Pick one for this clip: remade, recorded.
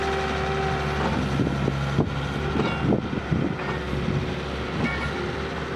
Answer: recorded